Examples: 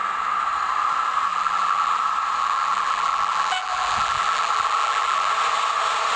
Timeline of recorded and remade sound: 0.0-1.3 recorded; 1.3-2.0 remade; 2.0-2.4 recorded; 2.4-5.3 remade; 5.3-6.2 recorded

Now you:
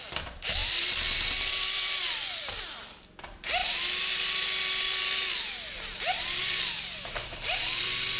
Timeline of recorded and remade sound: 0.0-3.6 remade; 3.6-6.4 recorded; 6.4-8.2 remade

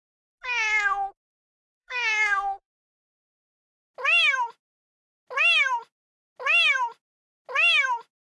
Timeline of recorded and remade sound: 0.0-1.8 recorded; 1.8-3.6 remade; 3.6-8.3 recorded